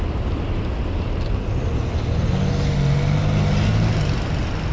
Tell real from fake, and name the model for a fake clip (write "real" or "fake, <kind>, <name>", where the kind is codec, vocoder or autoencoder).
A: real